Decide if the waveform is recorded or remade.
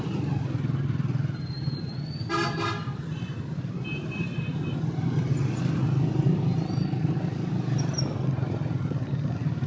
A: recorded